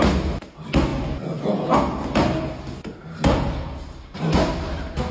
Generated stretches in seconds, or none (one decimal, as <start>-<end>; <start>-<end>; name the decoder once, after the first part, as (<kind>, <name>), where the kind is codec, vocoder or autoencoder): none